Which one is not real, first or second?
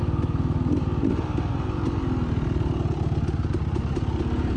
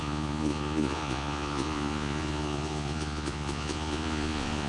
second